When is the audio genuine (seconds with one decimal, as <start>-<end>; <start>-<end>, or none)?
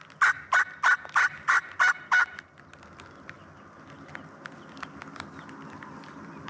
0.0-6.5